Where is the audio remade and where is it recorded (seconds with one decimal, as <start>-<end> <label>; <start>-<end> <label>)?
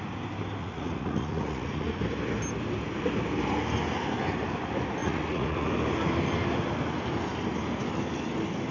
0.0-0.6 recorded; 0.6-2.0 remade; 2.0-5.0 recorded; 5.0-5.7 remade; 5.7-8.7 recorded